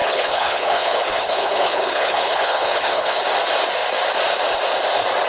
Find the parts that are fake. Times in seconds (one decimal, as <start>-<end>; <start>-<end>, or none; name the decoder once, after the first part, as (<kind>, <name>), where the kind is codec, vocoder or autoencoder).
0.0-3.2 (codec, HILCodec)